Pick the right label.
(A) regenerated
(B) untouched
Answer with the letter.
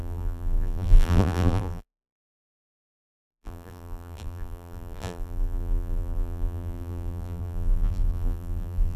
A